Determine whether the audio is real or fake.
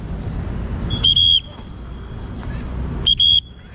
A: real